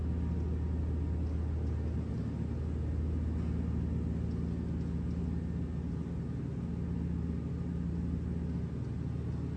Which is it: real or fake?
real